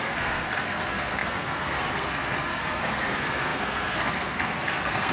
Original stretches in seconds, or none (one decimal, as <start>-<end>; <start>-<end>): none